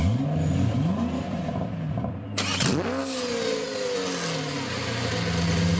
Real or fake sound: real